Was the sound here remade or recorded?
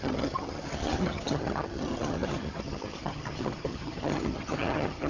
remade